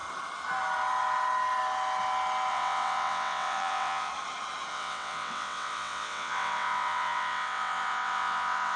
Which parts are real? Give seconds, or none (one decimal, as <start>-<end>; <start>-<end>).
0.0-2.5; 4.1-4.7